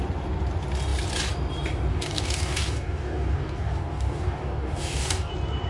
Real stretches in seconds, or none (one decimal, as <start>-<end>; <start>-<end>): 0.0-1.9; 5.3-5.7